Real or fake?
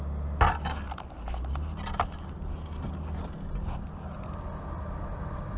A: real